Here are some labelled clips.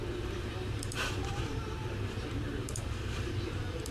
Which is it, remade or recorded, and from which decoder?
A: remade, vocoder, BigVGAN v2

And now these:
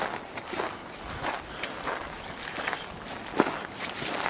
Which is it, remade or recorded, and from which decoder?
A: recorded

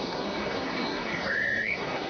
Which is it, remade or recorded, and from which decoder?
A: remade, codec, SNAC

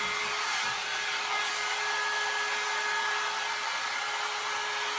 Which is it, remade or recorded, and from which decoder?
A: recorded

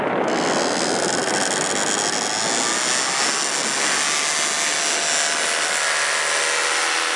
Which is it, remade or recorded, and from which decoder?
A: recorded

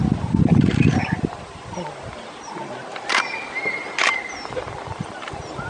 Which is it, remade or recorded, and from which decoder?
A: recorded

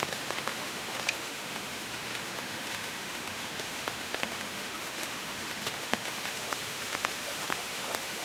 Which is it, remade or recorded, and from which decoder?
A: remade, autoencoder, DAC-VAE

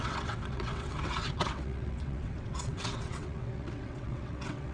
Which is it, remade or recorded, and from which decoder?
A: remade, vocoder, WaveNeXt